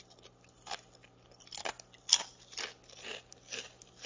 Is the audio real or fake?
real